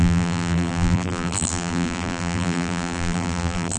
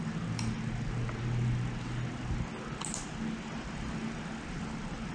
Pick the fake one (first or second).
first